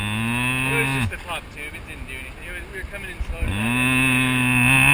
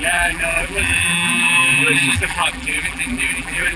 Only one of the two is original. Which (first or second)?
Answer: first